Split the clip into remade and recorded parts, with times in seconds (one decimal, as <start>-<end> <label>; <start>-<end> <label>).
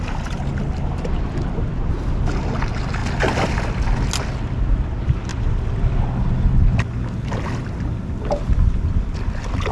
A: 0.0-9.7 recorded